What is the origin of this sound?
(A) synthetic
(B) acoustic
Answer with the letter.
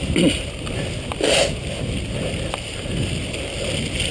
B